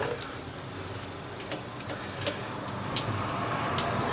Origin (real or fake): real